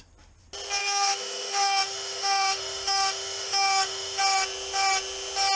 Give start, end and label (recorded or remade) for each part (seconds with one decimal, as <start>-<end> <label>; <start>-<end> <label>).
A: 0.0-0.8 recorded; 0.8-4.2 remade; 4.2-5.6 recorded